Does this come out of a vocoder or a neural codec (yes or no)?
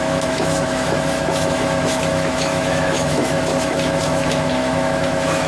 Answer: yes